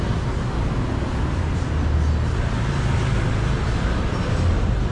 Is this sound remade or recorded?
recorded